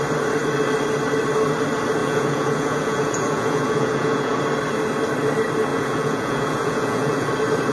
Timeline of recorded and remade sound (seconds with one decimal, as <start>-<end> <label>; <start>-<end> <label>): 0.0-2.0 recorded; 2.0-4.4 remade; 4.4-5.7 recorded; 5.7-7.3 remade; 7.3-7.7 recorded